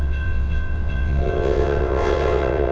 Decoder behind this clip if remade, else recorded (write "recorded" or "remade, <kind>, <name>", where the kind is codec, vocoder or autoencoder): remade, vocoder, WaveNeXt